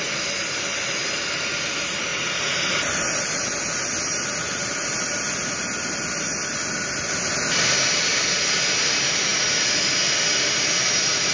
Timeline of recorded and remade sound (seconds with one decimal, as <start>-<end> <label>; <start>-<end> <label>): 0.0-11.3 recorded